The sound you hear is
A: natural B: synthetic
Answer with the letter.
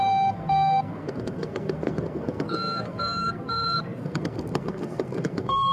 B